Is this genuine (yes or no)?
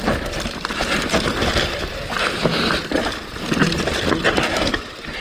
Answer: no